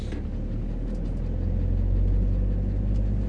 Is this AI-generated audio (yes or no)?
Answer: no